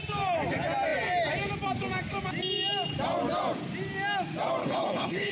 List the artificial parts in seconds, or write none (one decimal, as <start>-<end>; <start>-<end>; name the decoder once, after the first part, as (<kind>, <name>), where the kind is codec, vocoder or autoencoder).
4.6-5.3 (codec, HILCodec)